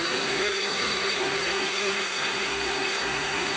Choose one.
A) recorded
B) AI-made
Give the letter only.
B